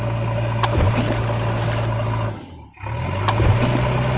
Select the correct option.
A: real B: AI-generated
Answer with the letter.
A